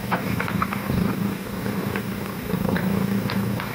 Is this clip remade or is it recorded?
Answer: remade